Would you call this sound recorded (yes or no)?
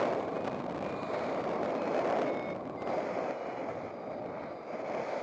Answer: yes